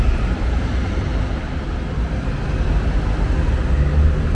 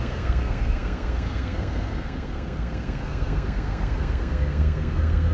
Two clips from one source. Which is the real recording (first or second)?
first